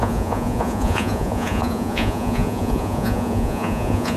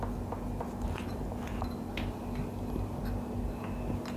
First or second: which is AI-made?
first